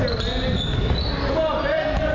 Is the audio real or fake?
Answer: real